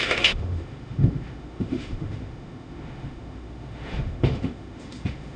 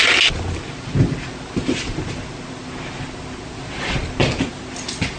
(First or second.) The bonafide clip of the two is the second